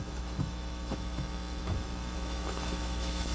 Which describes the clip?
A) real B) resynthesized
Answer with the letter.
B